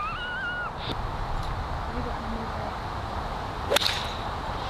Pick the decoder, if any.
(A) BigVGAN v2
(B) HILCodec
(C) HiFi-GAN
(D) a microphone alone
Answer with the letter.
D